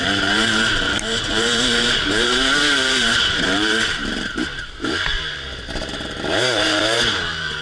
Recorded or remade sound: remade